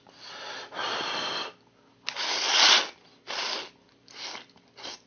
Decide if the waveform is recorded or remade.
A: recorded